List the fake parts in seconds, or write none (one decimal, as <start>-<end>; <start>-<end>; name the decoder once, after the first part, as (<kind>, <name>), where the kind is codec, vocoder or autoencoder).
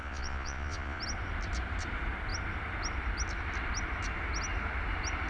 0.0-1.0 (vocoder, Vocos)